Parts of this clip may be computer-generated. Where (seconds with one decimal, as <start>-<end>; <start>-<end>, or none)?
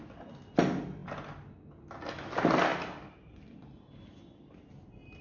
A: none